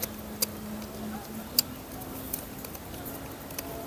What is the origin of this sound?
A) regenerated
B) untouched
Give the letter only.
B